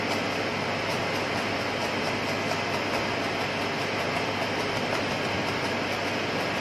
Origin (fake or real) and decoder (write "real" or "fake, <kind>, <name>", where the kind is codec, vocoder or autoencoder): real